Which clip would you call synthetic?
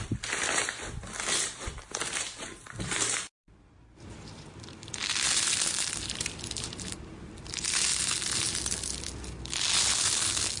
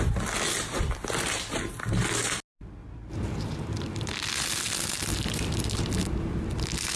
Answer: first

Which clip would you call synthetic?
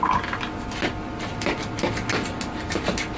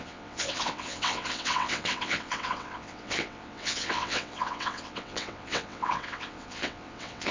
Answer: second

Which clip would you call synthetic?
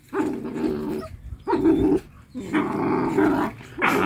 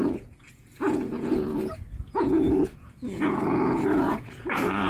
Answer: second